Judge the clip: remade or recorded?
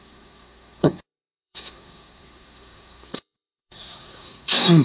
remade